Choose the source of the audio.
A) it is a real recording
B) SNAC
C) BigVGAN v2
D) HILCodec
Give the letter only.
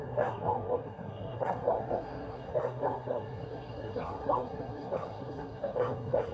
B